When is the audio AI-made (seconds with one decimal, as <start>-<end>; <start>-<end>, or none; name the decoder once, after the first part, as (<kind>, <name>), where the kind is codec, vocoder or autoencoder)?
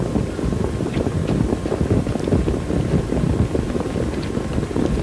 none